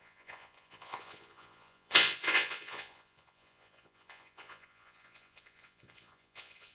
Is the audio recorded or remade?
remade